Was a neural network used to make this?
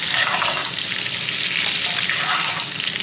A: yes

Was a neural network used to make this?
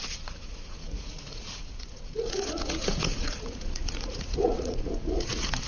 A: yes